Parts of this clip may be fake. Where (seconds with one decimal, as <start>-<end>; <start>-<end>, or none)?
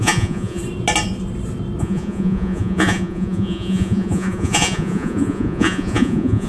0.0-0.6; 1.8-6.5